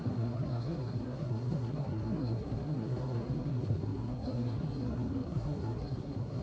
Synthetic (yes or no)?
yes